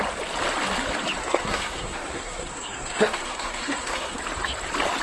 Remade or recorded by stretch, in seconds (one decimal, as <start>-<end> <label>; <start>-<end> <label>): 0.0-1.2 recorded; 1.2-4.2 remade; 4.2-5.0 recorded